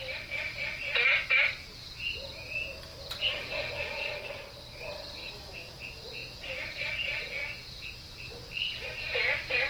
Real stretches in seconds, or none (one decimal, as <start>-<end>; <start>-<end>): 0.0-5.2; 5.7-9.7